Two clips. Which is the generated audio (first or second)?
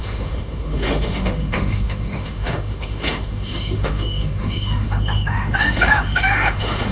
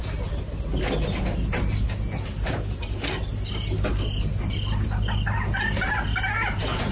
first